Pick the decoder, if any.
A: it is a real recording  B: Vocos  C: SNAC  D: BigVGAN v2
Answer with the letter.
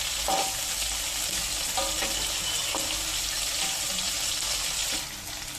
A